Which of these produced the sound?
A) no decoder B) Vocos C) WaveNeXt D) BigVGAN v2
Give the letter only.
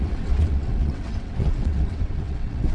C